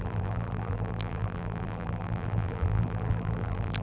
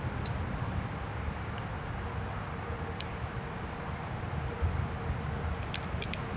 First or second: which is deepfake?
first